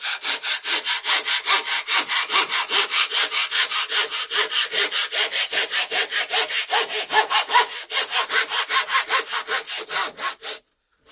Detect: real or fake real